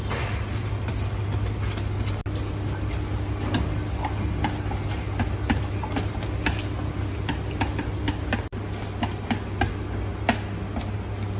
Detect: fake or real real